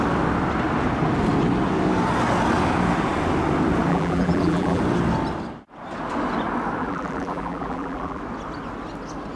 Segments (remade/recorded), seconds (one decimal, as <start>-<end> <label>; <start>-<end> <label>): 0.0-3.9 recorded; 3.9-4.8 remade; 4.8-6.8 recorded; 6.8-8.2 remade; 8.2-9.4 recorded